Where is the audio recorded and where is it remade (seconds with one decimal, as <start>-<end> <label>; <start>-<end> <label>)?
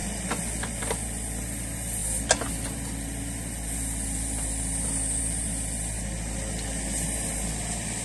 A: 0.0-8.0 recorded